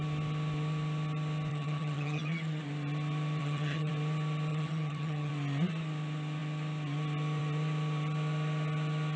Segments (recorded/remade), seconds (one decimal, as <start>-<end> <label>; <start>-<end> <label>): 0.0-1.5 recorded; 1.5-2.6 remade; 2.6-3.4 recorded; 3.4-3.9 remade; 3.9-4.5 recorded; 4.5-5.3 remade; 5.3-9.2 recorded